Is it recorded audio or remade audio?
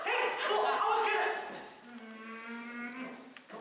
recorded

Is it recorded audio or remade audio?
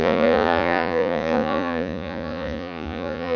remade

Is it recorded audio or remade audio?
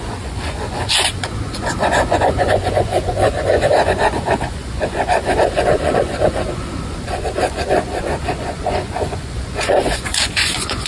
remade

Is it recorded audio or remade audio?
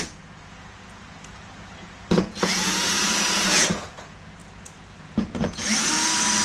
remade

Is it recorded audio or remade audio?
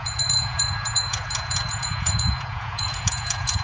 remade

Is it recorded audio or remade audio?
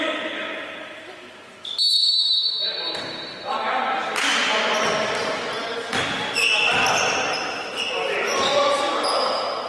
recorded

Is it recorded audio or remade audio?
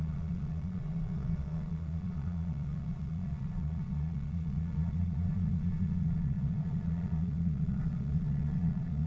remade